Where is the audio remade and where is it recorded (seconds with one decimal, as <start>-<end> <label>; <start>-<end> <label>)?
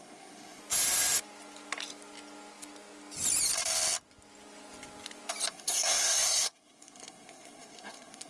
0.0-0.6 remade; 0.6-5.5 recorded; 5.5-8.3 remade